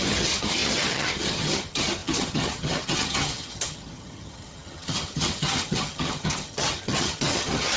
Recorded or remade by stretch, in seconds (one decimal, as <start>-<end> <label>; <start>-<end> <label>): 0.0-7.8 remade